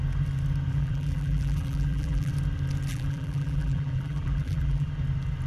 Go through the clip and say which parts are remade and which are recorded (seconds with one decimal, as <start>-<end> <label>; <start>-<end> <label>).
0.0-0.7 recorded; 0.7-2.3 remade; 2.3-2.9 recorded; 2.9-4.9 remade; 4.9-5.5 recorded